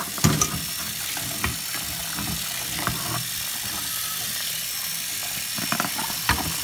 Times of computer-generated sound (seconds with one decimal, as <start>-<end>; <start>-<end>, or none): 2.0-4.4